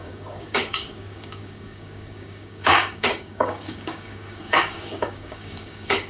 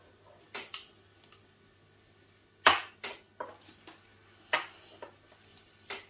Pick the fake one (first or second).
first